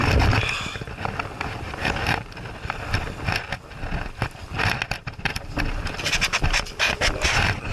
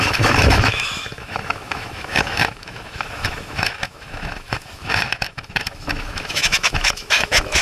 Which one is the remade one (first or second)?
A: second